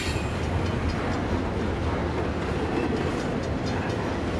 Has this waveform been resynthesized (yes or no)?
no